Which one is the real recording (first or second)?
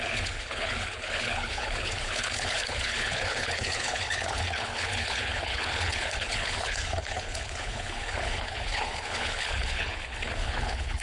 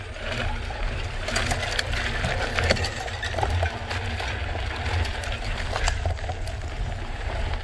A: second